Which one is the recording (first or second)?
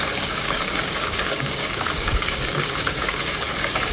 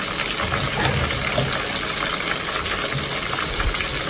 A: second